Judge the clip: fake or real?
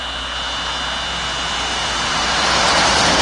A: real